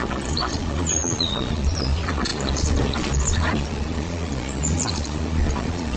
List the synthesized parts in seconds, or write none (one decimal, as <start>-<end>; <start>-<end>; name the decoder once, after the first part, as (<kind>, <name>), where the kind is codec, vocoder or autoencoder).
0.0-6.0 (vocoder, Vocos)